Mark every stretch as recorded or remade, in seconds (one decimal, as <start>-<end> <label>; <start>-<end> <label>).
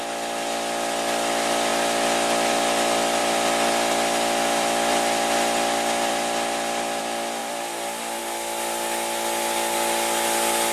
0.0-3.2 recorded; 3.2-7.0 remade; 7.0-7.4 recorded; 7.4-8.2 remade; 8.2-10.7 recorded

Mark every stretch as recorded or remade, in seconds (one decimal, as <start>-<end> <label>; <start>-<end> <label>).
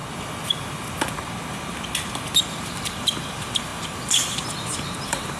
0.0-2.4 recorded; 2.4-5.4 remade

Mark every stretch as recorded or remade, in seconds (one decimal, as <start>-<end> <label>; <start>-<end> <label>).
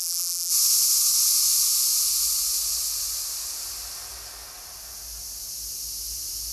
0.0-0.5 remade; 0.5-6.5 recorded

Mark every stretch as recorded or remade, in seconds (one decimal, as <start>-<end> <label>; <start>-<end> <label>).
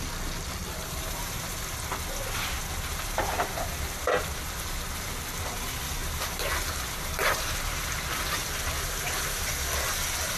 0.0-0.6 recorded; 0.6-1.5 remade; 1.5-2.9 recorded; 2.9-4.0 remade; 4.0-6.0 recorded; 6.0-9.4 remade; 9.4-10.4 recorded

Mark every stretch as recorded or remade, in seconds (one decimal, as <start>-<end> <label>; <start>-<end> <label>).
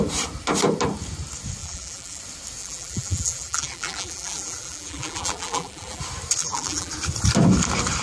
0.0-1.6 recorded; 1.6-2.2 remade; 2.2-2.6 recorded; 2.6-6.0 remade; 6.0-6.4 recorded; 6.4-6.9 remade; 6.9-8.0 recorded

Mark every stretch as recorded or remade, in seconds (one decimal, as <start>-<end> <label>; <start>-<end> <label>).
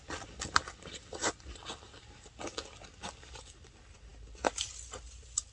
0.0-5.5 recorded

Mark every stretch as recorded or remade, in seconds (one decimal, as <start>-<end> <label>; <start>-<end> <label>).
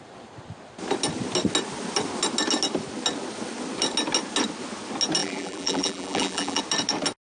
0.0-5.2 recorded; 5.2-6.6 remade; 6.6-7.3 recorded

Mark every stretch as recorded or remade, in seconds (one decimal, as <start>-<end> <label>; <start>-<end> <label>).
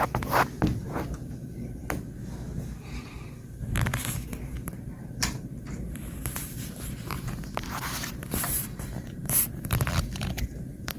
0.0-1.8 remade; 1.8-2.8 recorded; 2.8-11.0 remade